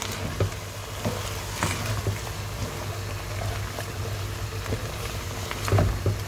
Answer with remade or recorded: recorded